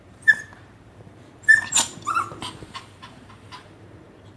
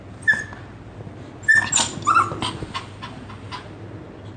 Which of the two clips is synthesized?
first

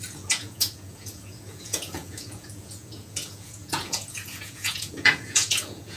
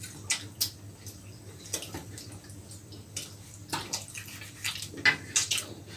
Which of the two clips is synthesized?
first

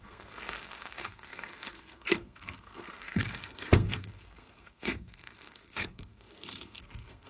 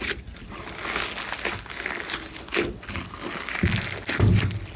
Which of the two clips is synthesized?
first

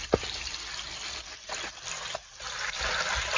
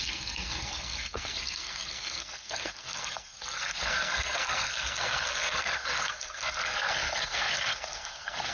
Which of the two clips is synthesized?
second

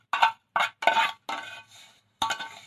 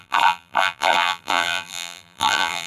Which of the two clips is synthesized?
second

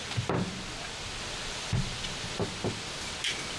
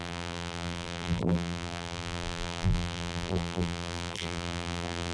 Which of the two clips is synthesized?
second